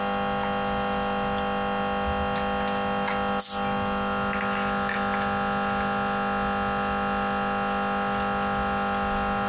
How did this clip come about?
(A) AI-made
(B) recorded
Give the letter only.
B